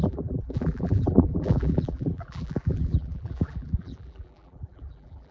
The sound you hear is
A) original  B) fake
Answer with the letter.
B